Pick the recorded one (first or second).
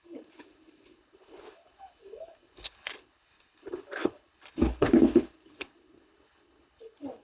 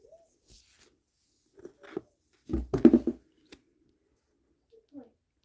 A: second